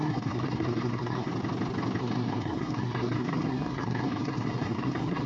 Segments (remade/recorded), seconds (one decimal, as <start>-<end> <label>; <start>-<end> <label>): 0.0-1.3 remade; 1.3-2.0 recorded; 2.0-5.3 remade